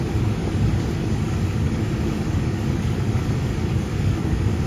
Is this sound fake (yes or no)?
yes